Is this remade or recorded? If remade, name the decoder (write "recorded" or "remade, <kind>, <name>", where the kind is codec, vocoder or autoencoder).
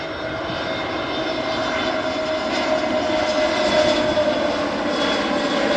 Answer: recorded